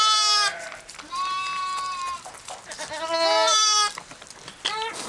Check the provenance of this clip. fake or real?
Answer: real